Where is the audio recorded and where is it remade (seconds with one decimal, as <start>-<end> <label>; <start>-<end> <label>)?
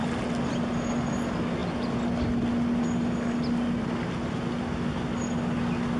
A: 0.0-6.0 recorded